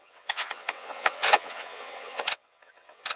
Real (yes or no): no